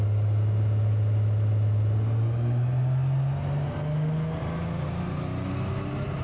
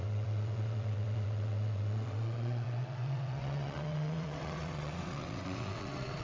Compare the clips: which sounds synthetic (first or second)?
second